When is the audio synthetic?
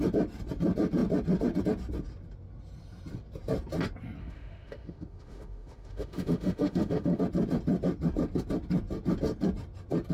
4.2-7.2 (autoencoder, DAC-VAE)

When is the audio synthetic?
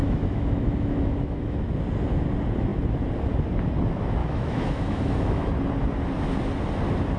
0.0-1.6 (autoencoder, DAC-VAE); 4.2-5.5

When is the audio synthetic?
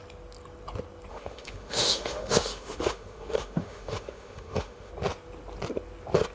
1.1-4.9 (autoencoder, DAC-VAE)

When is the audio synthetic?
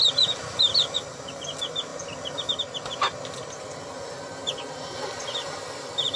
none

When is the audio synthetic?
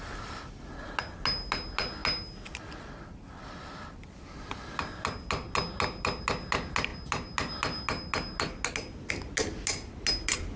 none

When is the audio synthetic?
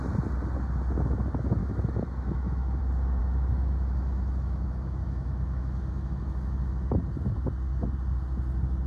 1.6-2.8 (autoencoder, DAC-VAE); 3.2-7.0